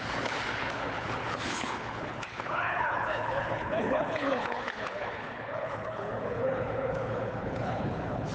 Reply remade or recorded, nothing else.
remade